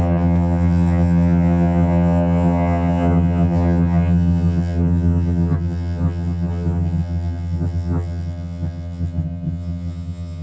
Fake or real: fake